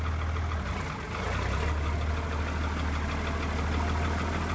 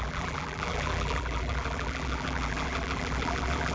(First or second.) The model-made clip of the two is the second